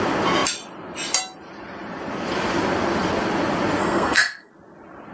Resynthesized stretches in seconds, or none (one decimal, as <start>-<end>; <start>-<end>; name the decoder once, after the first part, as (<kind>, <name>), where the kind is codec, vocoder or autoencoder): 3.8-4.5 (codec, SNAC)